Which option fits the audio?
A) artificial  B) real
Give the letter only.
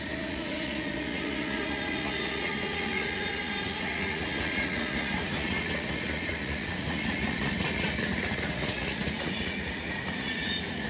A